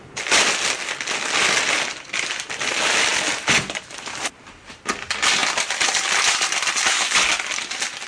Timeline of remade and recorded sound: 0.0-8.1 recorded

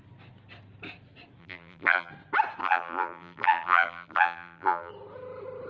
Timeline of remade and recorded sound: 0.0-1.4 recorded; 1.4-2.1 remade; 2.1-2.6 recorded; 2.6-4.9 remade; 4.9-5.7 recorded